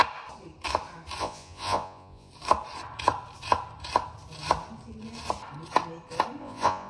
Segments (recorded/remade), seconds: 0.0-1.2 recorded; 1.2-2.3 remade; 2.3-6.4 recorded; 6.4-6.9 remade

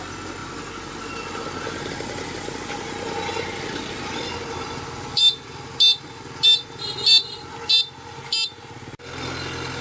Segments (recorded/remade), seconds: 0.0-9.8 recorded

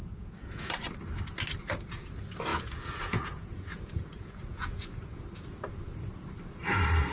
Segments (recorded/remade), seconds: 0.0-0.7 remade; 0.7-2.5 recorded; 2.5-5.2 remade; 5.2-7.1 recorded

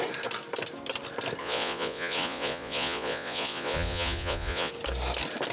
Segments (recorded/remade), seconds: 0.0-1.4 recorded; 1.4-4.7 remade; 4.7-5.5 recorded